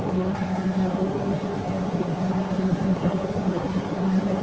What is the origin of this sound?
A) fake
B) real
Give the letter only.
A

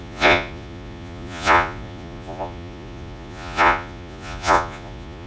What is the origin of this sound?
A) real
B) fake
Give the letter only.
B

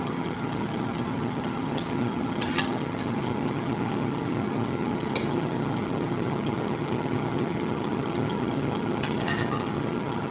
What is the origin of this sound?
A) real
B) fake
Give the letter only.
B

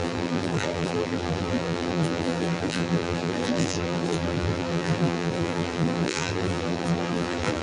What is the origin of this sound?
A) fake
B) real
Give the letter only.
A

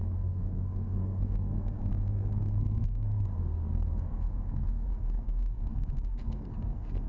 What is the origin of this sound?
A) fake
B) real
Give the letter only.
A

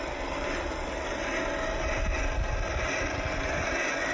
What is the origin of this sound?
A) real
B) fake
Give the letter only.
A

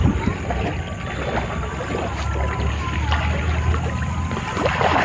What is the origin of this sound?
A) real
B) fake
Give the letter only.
A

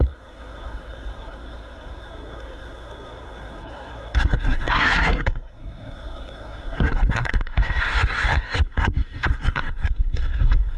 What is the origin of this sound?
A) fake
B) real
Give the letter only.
A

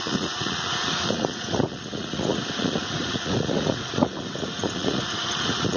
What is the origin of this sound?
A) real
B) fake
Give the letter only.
B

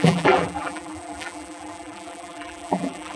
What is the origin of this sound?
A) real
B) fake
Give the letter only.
B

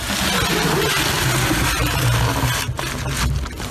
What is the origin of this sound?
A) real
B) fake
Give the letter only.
A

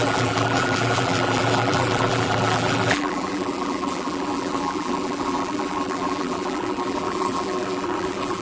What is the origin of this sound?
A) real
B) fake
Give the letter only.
B